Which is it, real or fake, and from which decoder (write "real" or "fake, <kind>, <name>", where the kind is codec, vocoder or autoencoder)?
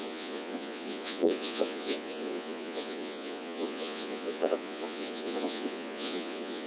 fake, vocoder, Vocos